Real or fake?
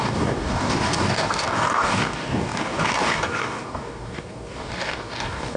fake